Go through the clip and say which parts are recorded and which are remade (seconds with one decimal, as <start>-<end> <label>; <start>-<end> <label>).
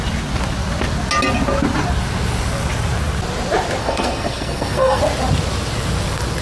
0.0-3.8 recorded; 3.8-5.0 remade; 5.0-6.4 recorded